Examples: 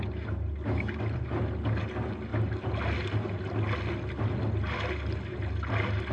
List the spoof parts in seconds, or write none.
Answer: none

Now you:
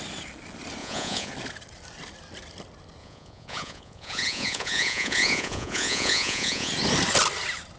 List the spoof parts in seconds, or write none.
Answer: 0.8-1.3 (vocoder, Vocos); 3.0-6.7

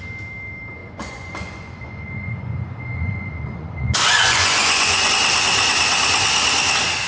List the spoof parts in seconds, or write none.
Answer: 0.8-5.1 (vocoder, Vocos)

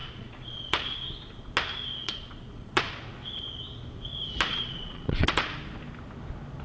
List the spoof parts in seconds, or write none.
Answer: 0.0-1.5 (vocoder, Vocos); 2.0-2.9; 4.5-5.3

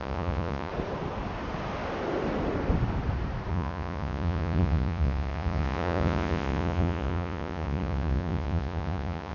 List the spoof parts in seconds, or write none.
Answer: 0.0-0.7 (vocoder, Vocos); 3.5-9.3

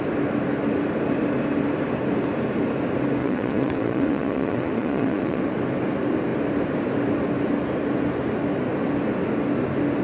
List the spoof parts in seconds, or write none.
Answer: 3.2-5.4 (vocoder, Vocos)